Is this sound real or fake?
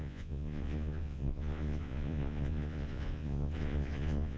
fake